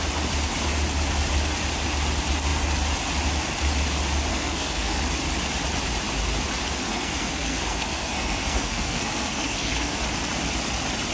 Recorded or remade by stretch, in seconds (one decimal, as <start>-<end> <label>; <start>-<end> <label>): 0.0-4.3 recorded; 4.3-5.0 remade; 5.0-6.9 recorded; 6.9-10.0 remade; 10.0-11.1 recorded